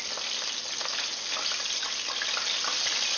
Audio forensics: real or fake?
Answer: real